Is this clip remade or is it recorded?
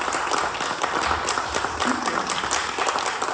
recorded